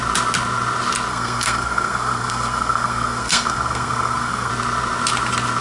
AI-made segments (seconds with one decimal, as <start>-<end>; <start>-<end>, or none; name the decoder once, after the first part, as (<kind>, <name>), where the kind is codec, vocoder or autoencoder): 1.1-4.5 (codec, SNAC)